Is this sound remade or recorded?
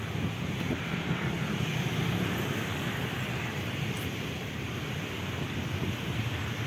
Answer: remade